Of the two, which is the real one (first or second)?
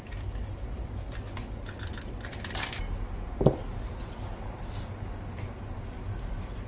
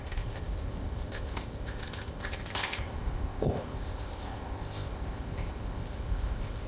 first